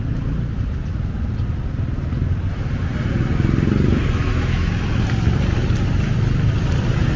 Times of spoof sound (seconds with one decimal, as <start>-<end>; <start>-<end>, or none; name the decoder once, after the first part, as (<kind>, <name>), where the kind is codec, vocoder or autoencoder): 4.2-4.7 (autoencoder, DAC-VAE)